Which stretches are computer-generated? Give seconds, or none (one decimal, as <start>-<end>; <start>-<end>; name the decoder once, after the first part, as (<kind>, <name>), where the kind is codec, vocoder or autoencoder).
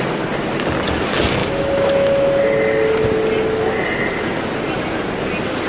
1.4-2.4 (autoencoder, DAC-VAE)